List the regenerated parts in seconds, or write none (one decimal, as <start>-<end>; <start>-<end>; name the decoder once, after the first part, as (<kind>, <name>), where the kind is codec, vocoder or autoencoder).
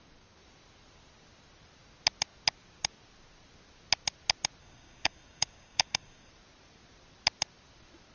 4.6-6.3 (codec, DAC)